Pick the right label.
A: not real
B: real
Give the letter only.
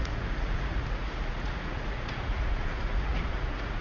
A